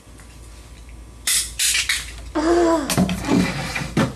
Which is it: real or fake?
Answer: real